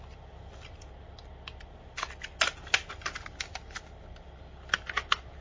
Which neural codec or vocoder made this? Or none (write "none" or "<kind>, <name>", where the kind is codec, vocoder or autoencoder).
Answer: none